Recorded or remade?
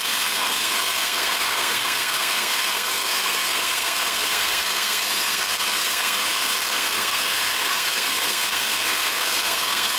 remade